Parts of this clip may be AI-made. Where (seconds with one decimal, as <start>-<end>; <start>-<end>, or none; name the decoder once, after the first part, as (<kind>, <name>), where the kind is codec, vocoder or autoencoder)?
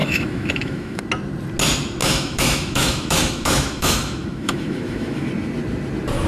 0.0-1.0 (autoencoder, DAC-VAE); 2.0-5.3